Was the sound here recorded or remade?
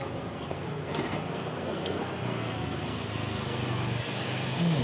remade